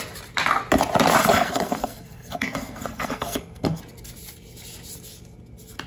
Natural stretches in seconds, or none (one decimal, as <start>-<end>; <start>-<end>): 0.0-1.2; 3.8-5.9